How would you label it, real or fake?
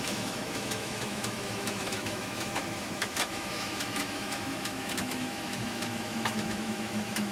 fake